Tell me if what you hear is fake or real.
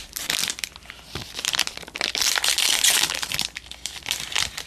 real